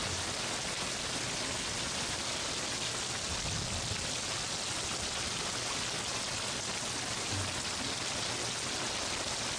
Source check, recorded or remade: recorded